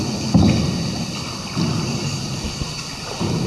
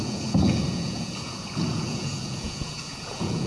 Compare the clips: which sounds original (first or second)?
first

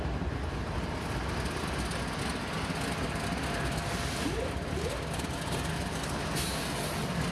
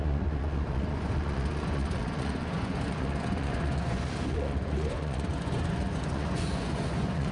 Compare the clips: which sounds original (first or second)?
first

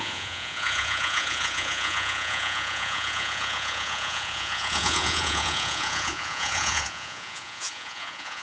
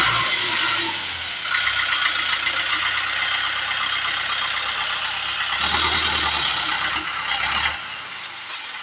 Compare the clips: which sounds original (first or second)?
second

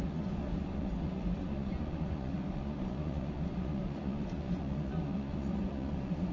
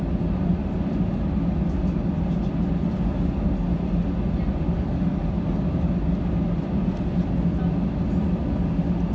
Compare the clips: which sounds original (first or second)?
second